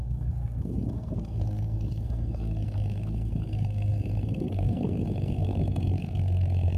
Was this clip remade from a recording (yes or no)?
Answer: yes